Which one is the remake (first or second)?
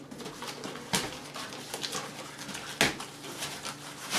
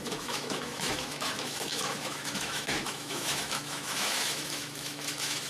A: second